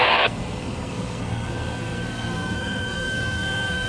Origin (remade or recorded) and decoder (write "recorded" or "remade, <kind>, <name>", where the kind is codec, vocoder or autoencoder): remade, codec, SNAC